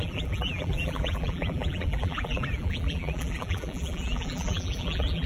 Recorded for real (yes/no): no